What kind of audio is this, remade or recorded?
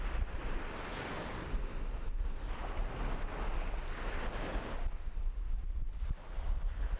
recorded